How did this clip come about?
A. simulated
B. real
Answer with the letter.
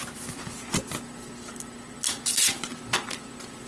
B